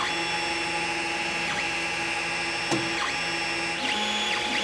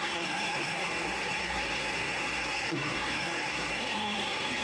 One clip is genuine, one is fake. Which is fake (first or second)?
second